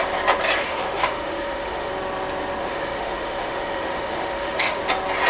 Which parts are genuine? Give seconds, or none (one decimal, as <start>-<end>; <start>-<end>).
0.0-0.6; 1.9-2.6; 4.8-5.3